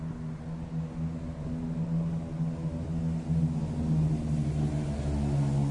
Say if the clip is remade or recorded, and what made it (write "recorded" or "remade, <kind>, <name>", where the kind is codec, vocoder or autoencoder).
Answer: recorded